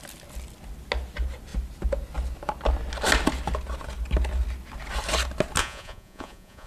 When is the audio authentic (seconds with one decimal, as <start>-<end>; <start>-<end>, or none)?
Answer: 0.0-5.6